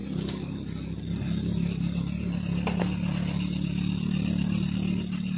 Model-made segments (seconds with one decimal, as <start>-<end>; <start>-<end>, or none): none

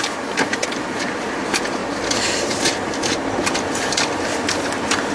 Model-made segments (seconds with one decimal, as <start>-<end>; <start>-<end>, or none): 0.0-1.8

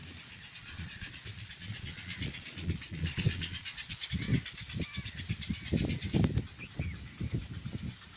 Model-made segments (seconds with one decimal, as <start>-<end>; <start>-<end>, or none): 0.0-4.1

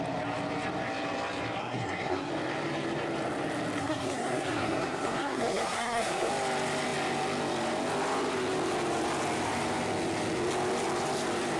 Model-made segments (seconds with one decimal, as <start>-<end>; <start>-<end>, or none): 1.6-2.3; 3.8-6.3

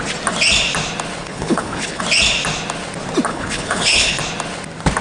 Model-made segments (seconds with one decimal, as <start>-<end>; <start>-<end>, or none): 1.2-2.0; 3.3-4.2

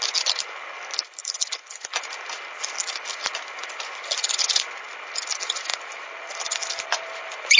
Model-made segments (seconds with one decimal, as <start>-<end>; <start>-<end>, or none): 5.7-7.0